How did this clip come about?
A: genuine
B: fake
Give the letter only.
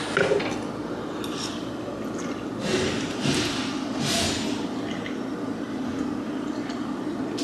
A